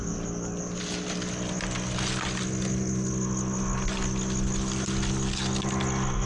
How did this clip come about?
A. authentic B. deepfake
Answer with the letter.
A